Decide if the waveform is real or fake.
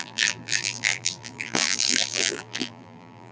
fake